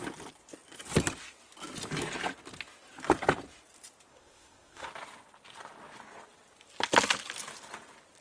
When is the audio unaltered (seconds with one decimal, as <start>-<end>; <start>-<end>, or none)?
0.0-4.1; 4.9-8.2